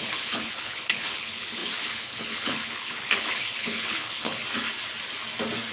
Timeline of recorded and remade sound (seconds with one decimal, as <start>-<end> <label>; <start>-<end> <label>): 0.0-4.4 remade; 4.4-5.7 recorded